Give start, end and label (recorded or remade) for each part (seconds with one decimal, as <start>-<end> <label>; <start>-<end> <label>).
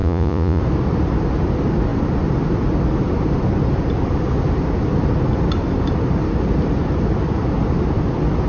0.0-0.6 remade; 0.6-8.5 recorded